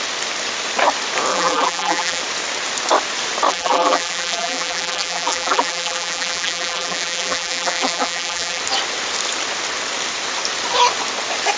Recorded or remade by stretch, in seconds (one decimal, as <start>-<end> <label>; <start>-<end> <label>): 0.0-1.3 recorded; 1.3-2.2 remade; 2.2-3.5 recorded; 3.5-8.6 remade; 8.6-11.6 recorded